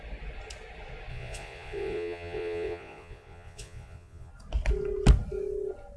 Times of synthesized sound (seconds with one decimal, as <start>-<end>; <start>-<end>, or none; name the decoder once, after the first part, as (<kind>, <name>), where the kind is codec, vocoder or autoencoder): 1.1-4.3 (vocoder, Vocos)